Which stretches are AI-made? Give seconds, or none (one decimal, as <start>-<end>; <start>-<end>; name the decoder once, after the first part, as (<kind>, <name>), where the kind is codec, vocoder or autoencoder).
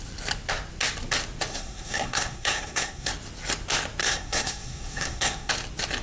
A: 1.5-3.1 (codec, SNAC); 4.0-5.5